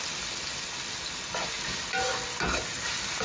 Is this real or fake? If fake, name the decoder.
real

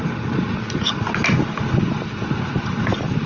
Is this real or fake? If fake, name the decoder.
real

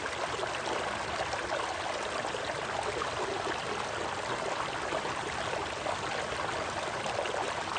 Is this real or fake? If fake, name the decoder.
real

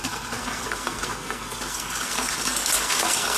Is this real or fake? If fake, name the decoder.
fake, codec, SNAC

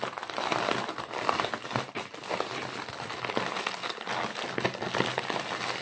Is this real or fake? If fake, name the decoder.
real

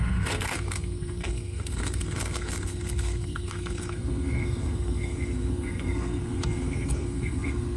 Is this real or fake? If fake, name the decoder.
fake, codec, SNAC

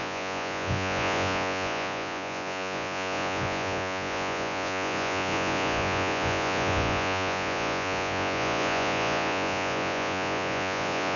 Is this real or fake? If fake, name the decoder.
fake, vocoder, Vocos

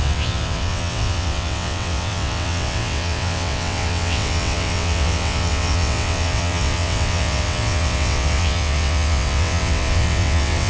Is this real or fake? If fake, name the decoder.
fake, vocoder, WaveNeXt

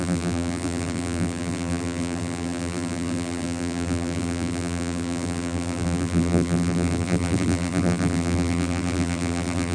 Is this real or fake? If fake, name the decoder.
fake, vocoder, BigVGAN v2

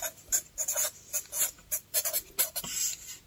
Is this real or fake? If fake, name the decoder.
real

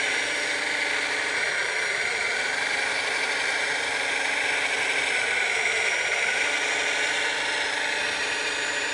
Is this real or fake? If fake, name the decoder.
fake, vocoder, BigVGAN v2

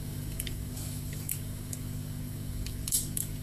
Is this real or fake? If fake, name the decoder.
fake, codec, DAC